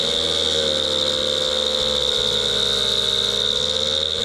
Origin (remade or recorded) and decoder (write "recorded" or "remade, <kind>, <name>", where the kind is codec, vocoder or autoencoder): recorded